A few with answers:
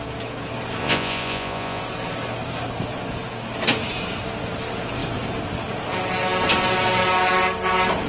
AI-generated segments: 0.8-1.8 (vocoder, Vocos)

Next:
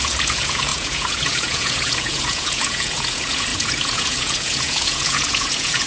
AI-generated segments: 0.0-5.9 (vocoder, Vocos)

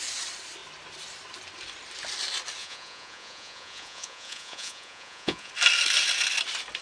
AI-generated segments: 2.6-5.5 (vocoder, Vocos)